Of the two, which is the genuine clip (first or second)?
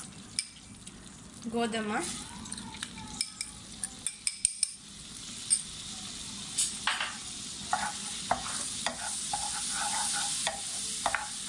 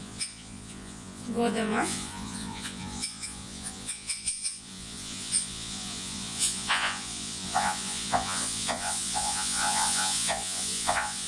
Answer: first